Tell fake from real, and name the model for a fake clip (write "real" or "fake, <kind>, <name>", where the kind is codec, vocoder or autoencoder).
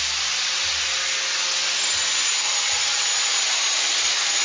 real